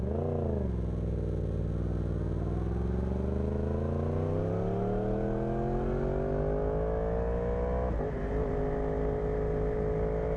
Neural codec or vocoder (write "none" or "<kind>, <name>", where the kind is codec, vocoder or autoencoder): none